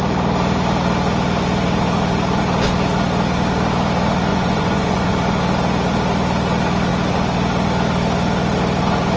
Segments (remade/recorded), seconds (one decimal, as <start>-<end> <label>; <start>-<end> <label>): 0.0-4.3 recorded; 4.3-5.1 remade; 5.1-9.2 recorded